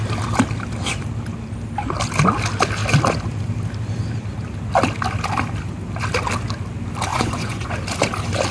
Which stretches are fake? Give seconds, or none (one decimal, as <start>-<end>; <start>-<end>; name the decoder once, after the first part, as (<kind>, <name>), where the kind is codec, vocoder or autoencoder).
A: 7.1-7.7 (vocoder, Vocos)